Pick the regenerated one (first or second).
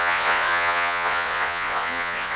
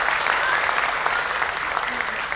first